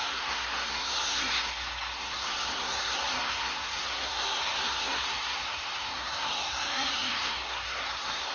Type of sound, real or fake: fake